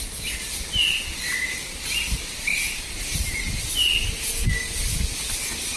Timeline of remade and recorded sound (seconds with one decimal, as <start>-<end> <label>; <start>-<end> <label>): 0.0-2.5 recorded; 2.5-3.5 remade; 3.5-5.8 recorded